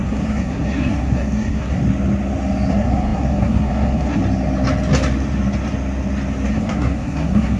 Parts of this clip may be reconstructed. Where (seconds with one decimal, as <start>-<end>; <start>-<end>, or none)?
0.0-1.8; 2.7-4.2; 6.5-7.6